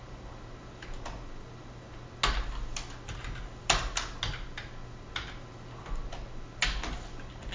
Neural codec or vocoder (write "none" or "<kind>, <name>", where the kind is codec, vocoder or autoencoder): none